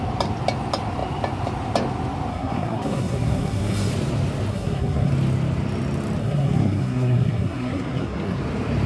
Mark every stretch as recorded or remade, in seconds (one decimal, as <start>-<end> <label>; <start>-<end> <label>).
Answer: 0.0-2.3 recorded; 2.3-3.9 remade; 3.9-4.5 recorded; 4.5-5.1 remade; 5.1-6.2 recorded; 6.2-8.4 remade; 8.4-8.9 recorded